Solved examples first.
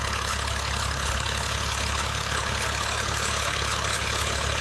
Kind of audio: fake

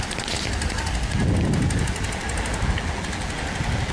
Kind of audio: real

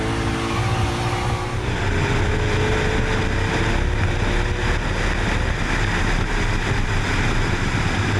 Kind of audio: real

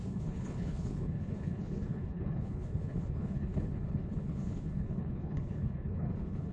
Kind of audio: fake